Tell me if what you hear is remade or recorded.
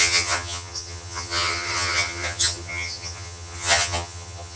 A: remade